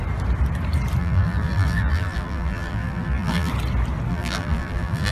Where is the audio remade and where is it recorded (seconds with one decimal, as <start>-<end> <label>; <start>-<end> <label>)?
0.0-1.0 recorded; 1.0-3.5 remade; 3.5-4.1 recorded; 4.1-5.1 remade